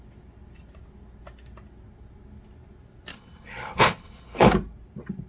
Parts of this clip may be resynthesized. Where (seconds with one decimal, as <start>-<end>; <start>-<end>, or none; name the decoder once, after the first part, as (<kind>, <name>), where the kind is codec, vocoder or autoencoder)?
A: 3.1-4.5 (codec, HILCodec)